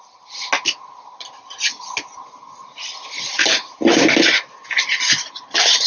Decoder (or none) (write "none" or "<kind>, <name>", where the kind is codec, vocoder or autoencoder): none